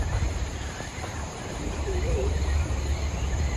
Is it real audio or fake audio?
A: fake